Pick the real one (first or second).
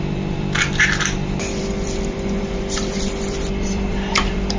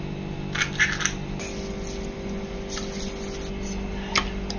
second